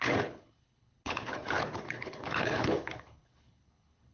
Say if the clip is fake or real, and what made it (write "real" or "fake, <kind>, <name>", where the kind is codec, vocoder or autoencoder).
fake, codec, HILCodec